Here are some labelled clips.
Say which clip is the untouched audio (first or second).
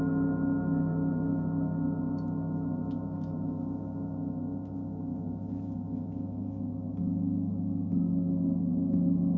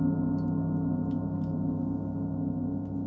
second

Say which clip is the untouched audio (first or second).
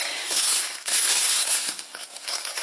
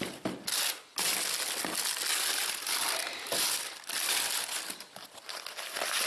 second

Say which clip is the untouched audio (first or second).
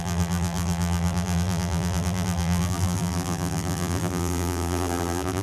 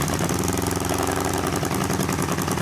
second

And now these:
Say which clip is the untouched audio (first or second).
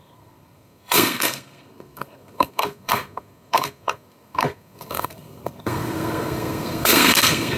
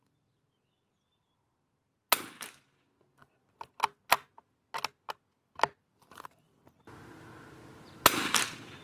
second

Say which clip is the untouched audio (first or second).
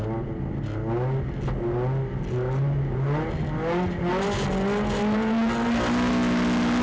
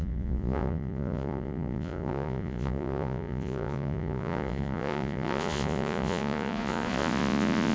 first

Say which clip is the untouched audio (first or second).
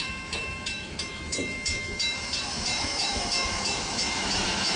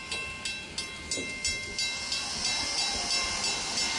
second